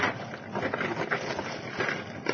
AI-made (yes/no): no